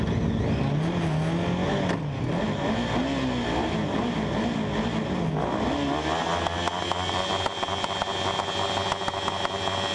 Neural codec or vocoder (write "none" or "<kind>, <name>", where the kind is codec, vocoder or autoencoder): none